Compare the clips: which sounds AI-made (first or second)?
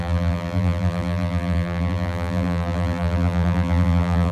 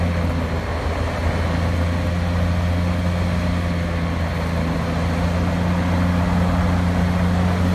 first